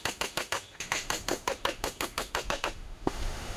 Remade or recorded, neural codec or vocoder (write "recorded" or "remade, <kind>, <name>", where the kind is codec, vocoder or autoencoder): remade, autoencoder, DAC-VAE